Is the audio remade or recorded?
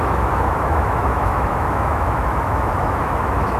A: remade